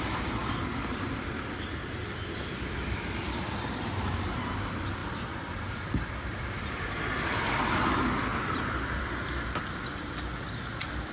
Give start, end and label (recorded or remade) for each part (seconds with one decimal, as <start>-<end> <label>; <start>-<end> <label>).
0.0-5.0 remade; 5.0-6.1 recorded; 6.1-8.3 remade; 8.3-9.0 recorded; 9.0-11.1 remade